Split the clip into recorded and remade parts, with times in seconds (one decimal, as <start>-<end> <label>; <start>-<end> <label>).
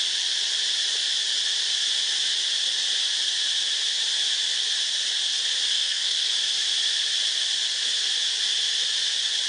0.0-5.7 recorded; 5.7-6.3 remade; 6.3-9.5 recorded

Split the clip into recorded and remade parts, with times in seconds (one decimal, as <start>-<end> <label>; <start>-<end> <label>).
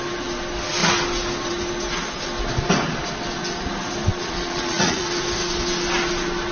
0.0-4.1 recorded; 4.1-5.0 remade; 5.0-6.5 recorded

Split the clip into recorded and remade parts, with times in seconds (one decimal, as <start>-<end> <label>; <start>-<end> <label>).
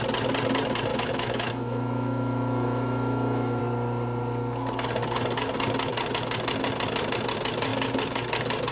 0.0-0.9 recorded; 0.9-3.6 remade; 3.6-8.7 recorded